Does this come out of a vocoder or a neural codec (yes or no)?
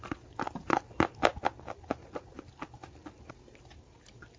no